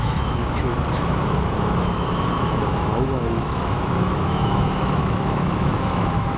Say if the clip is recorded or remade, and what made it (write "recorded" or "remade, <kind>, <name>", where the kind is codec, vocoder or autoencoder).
remade, autoencoder, DAC-VAE